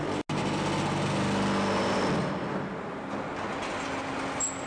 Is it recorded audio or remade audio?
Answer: recorded